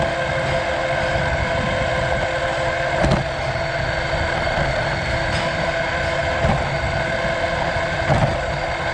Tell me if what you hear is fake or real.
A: real